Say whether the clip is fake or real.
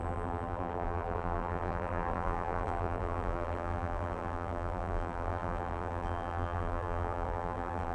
fake